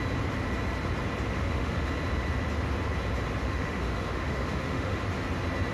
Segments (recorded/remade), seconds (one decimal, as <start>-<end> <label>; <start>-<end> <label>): 0.0-1.3 recorded; 1.3-1.9 remade; 1.9-3.4 recorded; 3.4-5.0 remade; 5.0-5.7 recorded